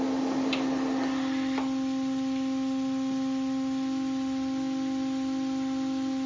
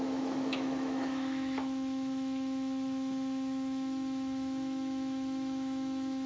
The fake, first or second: second